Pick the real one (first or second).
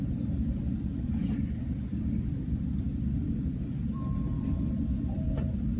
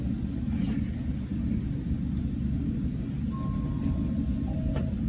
second